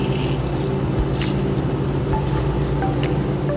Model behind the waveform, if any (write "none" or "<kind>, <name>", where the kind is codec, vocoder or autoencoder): none